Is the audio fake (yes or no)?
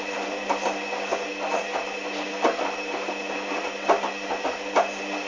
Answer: no